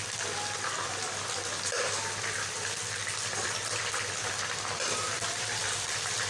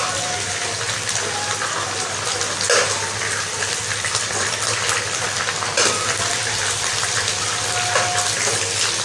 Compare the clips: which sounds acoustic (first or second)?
second